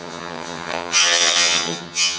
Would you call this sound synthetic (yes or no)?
yes